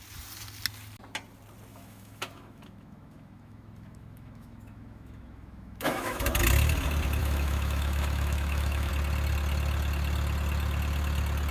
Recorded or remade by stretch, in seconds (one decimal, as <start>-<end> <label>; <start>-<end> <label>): 0.0-1.7 recorded; 1.7-6.3 remade; 6.3-7.2 recorded; 7.2-8.9 remade; 8.9-11.5 recorded